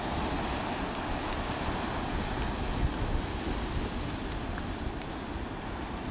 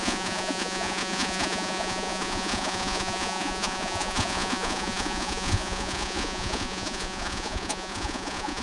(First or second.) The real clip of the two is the first